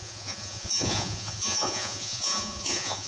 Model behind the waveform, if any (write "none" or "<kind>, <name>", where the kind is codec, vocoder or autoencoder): vocoder, Vocos